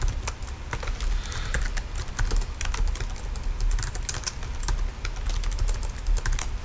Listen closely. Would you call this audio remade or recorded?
recorded